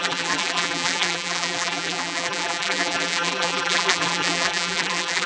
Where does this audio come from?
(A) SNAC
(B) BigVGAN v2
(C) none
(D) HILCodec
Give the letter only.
B